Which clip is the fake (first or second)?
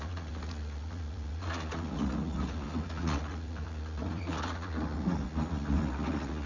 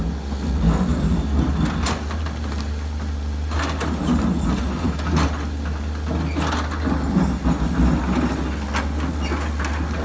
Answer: first